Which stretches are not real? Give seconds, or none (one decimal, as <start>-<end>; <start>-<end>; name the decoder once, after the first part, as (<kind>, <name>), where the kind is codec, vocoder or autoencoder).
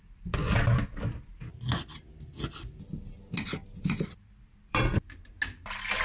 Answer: 3.6-5.0 (vocoder, BigVGAN v2)